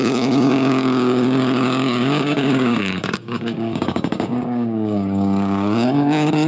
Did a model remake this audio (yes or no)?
yes